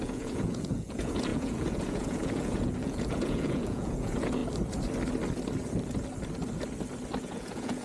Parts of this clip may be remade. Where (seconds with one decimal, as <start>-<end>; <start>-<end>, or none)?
0.0-4.4; 7.2-7.8